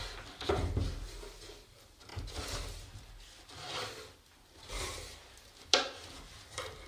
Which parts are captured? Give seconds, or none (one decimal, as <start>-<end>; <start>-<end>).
0.0-6.9

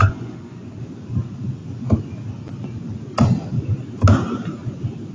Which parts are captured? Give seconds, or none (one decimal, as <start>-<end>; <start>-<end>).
0.8-5.1

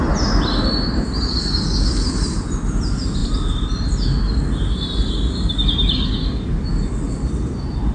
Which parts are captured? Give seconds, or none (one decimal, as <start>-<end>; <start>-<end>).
0.0-7.9

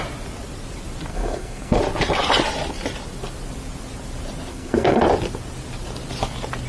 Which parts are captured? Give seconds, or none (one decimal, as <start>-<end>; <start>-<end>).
0.0-1.1; 1.8-4.5; 5.0-6.7

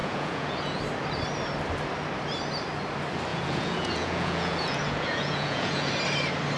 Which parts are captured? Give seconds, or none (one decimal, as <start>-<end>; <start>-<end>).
0.8-3.3; 5.9-6.6

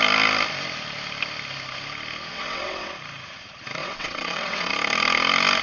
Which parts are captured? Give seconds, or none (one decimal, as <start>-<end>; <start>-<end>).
0.0-2.3; 2.9-3.8; 4.7-5.6